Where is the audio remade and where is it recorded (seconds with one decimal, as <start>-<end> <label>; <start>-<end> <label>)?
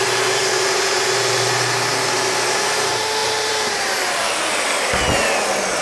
0.0-3.2 recorded; 3.2-4.5 remade; 4.5-5.8 recorded